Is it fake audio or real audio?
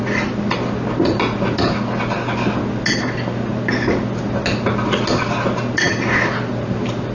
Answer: real